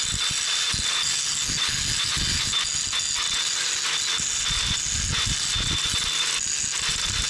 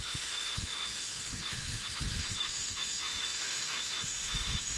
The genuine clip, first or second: first